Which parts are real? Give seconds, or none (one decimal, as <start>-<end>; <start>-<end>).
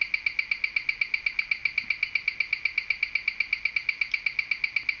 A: 0.0-5.0